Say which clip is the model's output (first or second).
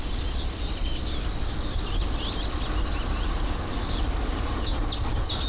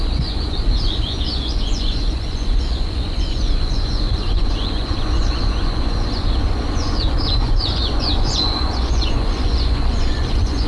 second